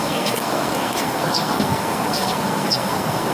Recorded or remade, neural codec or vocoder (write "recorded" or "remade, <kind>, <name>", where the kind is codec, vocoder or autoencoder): remade, codec, SNAC